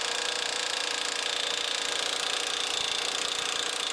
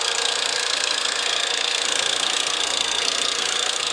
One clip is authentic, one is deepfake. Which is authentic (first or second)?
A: first